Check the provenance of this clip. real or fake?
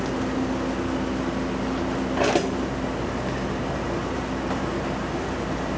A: real